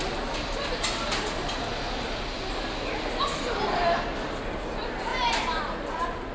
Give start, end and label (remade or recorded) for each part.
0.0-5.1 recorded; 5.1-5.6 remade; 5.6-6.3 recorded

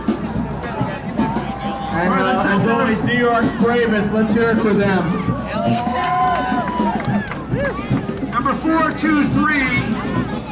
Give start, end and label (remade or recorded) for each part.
0.0-5.7 recorded; 5.7-6.2 remade; 6.2-10.5 recorded

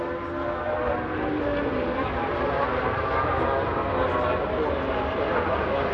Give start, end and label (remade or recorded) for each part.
0.0-5.9 recorded

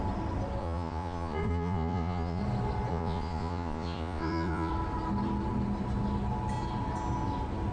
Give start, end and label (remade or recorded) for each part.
0.0-0.6 recorded; 0.6-2.4 remade; 2.4-2.9 recorded; 2.9-4.7 remade; 4.7-7.7 recorded

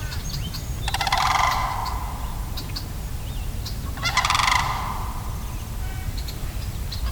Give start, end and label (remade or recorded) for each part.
0.0-7.1 recorded

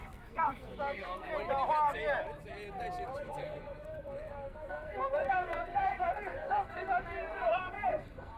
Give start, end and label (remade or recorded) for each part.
0.0-1.3 remade; 1.3-3.1 recorded; 3.1-8.4 remade

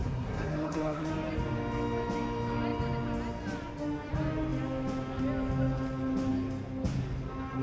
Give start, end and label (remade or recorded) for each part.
0.0-1.1 remade; 1.1-7.6 recorded

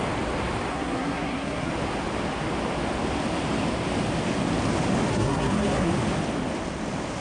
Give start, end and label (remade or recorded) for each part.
0.0-0.7 recorded; 0.7-1.7 remade; 1.7-5.1 recorded; 5.1-5.9 remade; 5.9-7.2 recorded